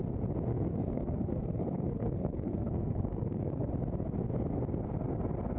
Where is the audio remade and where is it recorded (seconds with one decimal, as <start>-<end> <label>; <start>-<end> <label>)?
0.0-0.5 recorded; 0.5-3.7 remade; 3.7-5.6 recorded